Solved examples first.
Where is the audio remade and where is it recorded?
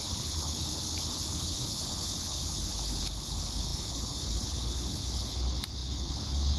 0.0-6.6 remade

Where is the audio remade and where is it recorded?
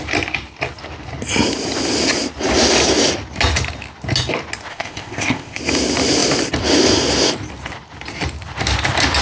0.0-4.7 recorded; 4.7-5.6 remade; 5.6-9.2 recorded